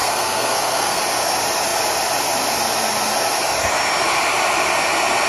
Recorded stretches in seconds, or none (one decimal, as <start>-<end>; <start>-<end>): 1.0-5.3